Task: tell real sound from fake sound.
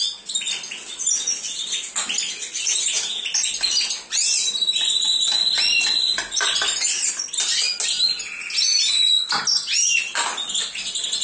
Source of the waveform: real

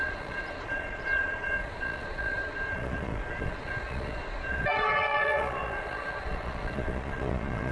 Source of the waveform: fake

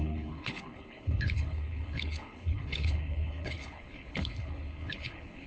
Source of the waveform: fake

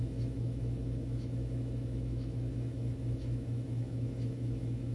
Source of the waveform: fake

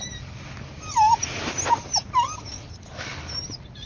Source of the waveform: real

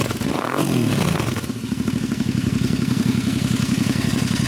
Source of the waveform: fake